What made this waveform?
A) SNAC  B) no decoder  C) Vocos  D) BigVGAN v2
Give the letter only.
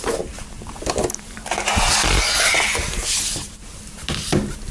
B